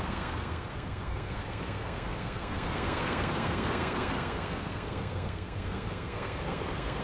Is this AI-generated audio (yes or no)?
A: yes